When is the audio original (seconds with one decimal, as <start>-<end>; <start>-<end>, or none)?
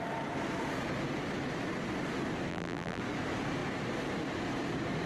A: 0.0-2.5; 3.0-5.1